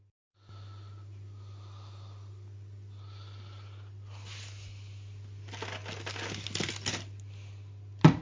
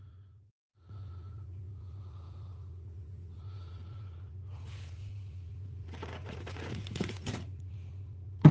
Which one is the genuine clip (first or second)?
first